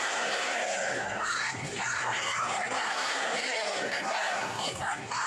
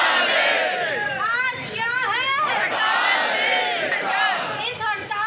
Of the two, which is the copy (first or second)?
first